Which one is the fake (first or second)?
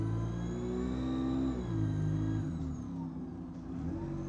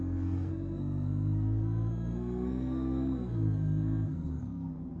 second